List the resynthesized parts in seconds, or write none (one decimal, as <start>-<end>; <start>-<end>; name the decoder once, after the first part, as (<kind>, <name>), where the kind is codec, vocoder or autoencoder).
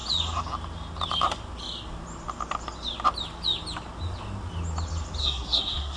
5.2-6.0 (codec, SNAC)